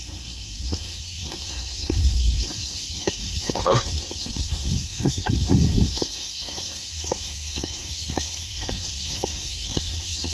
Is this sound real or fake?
fake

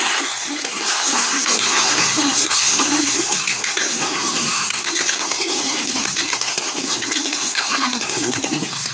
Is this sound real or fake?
fake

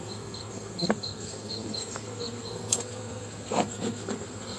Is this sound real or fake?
fake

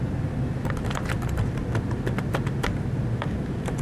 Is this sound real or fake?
real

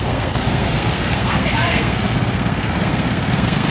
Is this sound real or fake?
fake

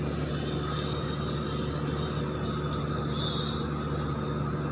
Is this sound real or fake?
real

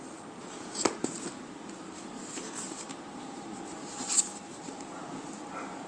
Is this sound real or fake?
real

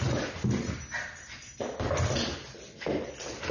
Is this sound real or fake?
real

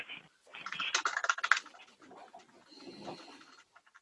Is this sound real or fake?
real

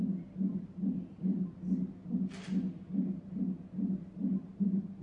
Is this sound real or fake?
real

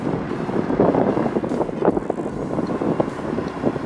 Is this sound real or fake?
real